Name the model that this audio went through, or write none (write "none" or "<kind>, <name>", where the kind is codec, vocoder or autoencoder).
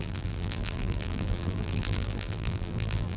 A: vocoder, BigVGAN v2